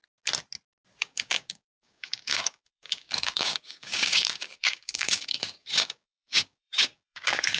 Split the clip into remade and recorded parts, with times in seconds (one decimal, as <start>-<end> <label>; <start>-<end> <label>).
0.0-1.0 recorded; 1.0-7.6 remade